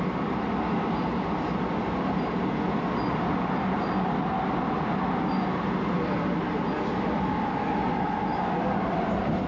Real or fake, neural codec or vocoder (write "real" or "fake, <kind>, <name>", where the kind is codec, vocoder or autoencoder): real